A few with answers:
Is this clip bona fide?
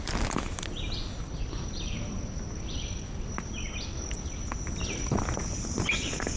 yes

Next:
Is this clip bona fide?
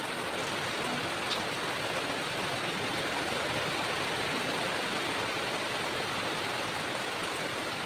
yes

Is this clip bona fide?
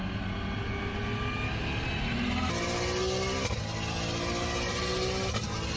yes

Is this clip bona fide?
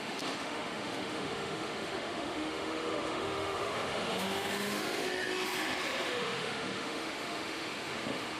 no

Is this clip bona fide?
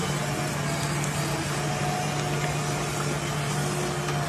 yes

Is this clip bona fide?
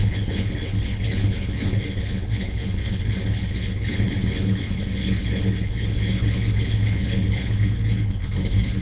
no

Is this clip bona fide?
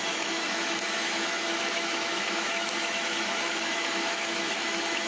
no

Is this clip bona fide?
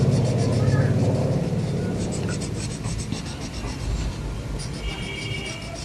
yes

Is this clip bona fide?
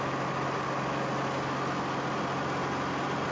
yes